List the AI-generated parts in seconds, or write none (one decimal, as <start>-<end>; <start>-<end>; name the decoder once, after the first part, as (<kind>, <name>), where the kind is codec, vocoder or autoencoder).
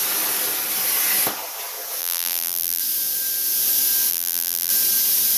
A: 2.0-2.8 (vocoder, BigVGAN v2); 4.1-4.7